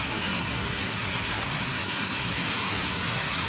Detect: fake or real fake